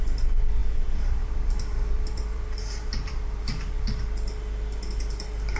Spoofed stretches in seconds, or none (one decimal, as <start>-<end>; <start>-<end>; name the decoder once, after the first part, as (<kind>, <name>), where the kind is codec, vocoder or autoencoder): 0.6-4.0 (vocoder, BigVGAN v2)